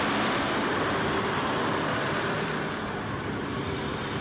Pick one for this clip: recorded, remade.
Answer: remade